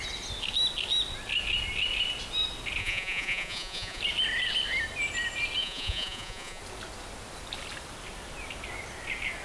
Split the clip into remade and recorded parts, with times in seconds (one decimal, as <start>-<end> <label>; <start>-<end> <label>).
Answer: 0.0-2.8 recorded; 2.8-4.0 remade; 4.0-5.6 recorded; 5.6-6.6 remade; 6.6-9.4 recorded